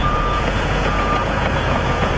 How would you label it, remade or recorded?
remade